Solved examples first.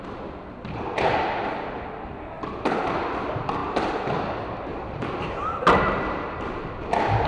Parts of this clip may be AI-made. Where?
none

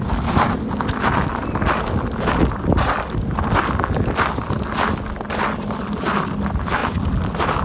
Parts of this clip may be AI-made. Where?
none

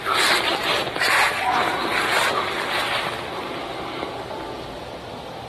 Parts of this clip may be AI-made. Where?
none

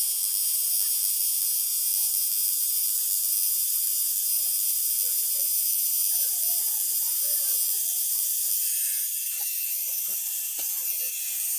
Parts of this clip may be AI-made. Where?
none

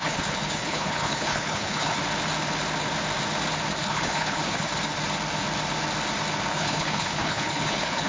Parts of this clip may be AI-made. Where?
0.0-2.0 (codec, HILCodec); 3.8-4.7; 6.5-8.1

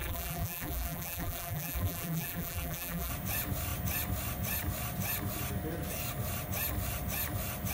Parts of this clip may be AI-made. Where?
0.0-3.1 (vocoder, BigVGAN v2)

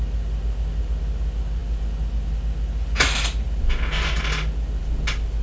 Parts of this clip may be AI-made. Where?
none

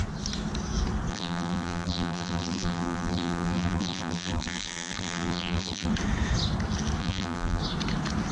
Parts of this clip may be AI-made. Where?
1.1-5.9 (vocoder, BigVGAN v2); 7.0-7.6